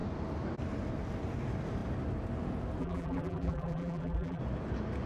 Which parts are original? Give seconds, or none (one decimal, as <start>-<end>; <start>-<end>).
0.0-2.8; 4.4-5.1

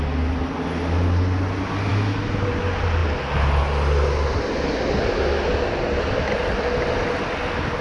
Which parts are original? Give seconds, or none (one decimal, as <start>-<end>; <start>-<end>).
0.0-7.8

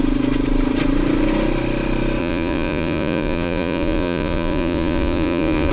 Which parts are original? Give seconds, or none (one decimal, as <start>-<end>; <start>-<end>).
0.0-2.2

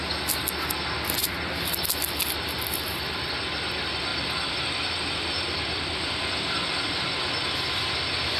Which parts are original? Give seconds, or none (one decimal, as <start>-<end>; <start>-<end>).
0.0-1.2; 1.8-4.1; 7.7-8.4

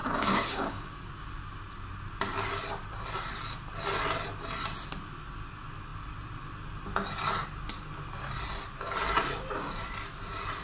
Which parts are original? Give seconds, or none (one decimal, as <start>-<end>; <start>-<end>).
1.1-10.6

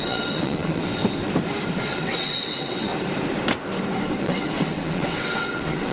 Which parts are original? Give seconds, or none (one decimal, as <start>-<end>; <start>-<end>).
1.0-1.9; 2.9-4.2

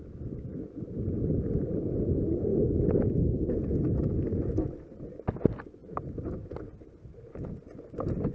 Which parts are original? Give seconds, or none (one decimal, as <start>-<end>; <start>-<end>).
0.0-2.5; 3.5-8.3

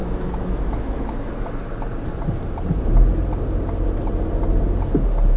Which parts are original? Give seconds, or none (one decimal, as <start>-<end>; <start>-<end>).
1.3-5.4